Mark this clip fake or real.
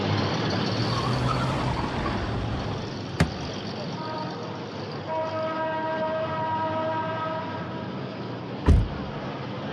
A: real